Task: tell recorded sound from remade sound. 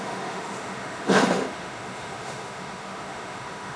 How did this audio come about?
remade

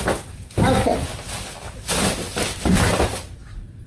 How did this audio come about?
recorded